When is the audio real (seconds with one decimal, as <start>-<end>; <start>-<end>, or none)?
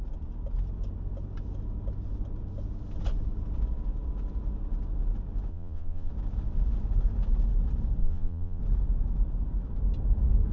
0.0-5.5; 6.1-8.0; 8.6-10.5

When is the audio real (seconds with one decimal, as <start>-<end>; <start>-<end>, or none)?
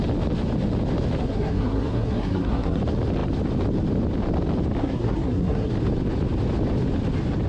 0.0-1.2; 2.8-4.8; 5.7-7.5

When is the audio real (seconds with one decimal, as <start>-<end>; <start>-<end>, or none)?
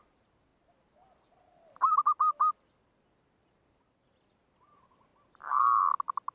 0.0-6.3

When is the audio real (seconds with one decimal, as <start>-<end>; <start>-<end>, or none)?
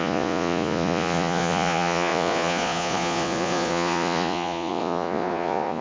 none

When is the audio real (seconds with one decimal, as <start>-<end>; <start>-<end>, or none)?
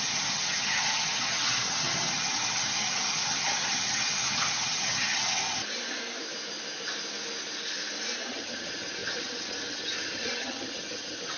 5.4-8.3